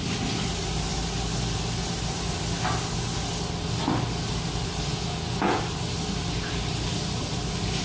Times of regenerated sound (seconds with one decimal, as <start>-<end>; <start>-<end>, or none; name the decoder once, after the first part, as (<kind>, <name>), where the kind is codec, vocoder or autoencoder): 4.9-5.6 (vocoder, Vocos)